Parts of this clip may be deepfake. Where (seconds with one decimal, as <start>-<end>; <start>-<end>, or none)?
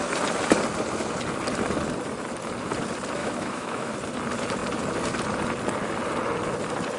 3.2-3.9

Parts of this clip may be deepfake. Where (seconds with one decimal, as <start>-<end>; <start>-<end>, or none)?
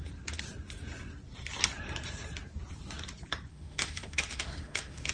3.5-5.1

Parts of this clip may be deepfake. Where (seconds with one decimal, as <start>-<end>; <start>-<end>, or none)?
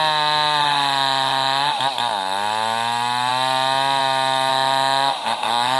0.6-1.8; 4.5-5.8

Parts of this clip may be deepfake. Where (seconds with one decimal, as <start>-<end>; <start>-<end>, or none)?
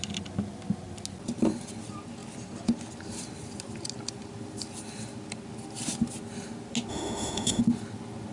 6.9-7.6